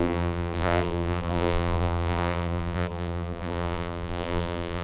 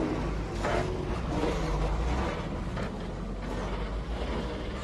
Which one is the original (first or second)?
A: second